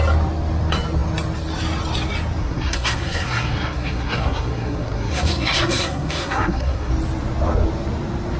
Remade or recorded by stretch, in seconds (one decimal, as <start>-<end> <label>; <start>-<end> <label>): 0.0-2.4 recorded; 2.4-6.9 remade; 6.9-8.4 recorded